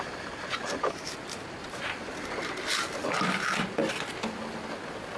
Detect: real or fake real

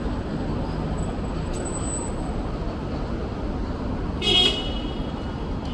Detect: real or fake real